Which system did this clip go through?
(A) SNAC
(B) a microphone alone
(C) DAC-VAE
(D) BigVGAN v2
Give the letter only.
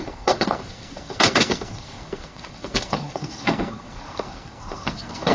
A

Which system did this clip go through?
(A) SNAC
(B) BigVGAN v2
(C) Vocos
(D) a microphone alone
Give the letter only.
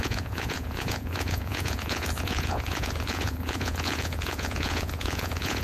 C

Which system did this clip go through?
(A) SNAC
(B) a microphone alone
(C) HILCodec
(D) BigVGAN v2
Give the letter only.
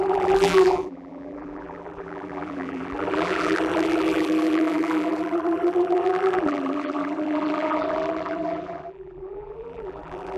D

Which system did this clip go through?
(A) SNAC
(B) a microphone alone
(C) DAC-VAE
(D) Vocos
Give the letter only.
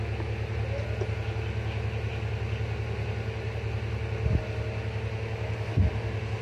B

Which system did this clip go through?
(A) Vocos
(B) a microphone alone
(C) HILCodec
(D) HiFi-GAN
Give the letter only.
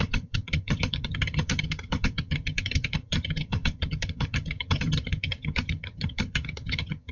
D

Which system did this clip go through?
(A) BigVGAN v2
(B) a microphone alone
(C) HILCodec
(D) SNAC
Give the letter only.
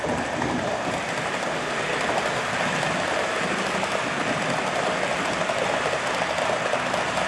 B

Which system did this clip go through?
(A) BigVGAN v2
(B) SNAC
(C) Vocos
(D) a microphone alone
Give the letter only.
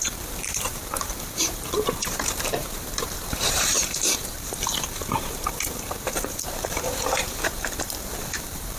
A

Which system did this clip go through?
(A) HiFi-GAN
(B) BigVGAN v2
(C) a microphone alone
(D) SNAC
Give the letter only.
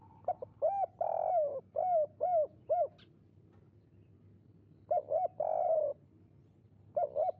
C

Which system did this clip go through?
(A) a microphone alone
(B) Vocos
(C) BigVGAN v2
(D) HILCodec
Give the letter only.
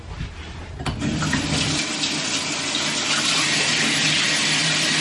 A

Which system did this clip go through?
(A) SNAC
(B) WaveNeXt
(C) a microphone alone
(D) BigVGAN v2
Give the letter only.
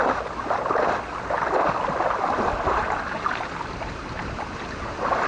C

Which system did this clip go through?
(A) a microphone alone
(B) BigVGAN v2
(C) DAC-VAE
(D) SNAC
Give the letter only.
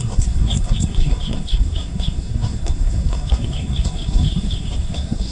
D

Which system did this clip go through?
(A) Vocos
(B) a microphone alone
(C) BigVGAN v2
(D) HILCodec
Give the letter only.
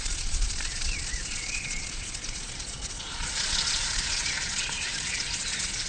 A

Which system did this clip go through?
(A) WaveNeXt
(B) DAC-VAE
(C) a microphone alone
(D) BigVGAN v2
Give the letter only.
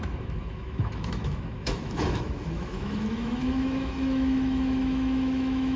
B